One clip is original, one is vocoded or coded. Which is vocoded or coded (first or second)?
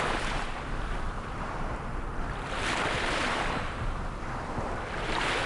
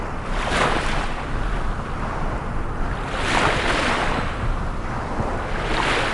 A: first